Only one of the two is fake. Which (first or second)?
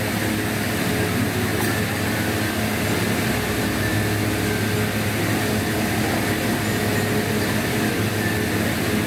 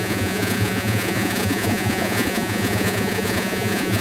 second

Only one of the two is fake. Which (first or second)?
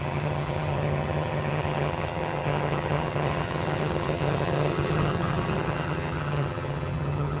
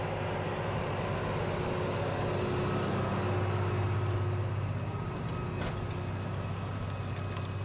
first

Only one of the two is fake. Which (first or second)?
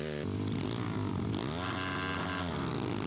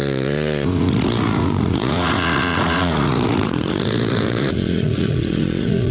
second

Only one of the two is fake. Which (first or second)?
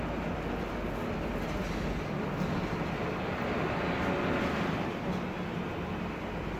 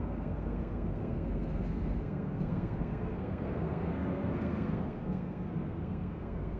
second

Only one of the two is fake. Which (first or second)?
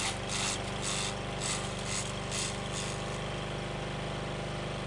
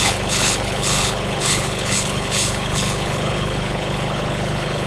second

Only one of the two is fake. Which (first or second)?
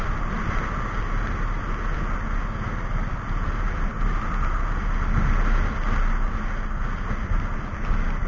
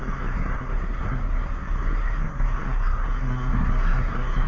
second